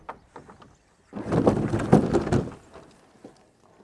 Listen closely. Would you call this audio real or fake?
real